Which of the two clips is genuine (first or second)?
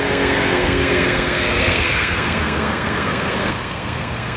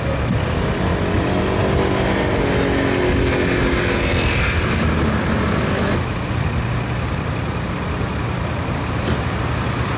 second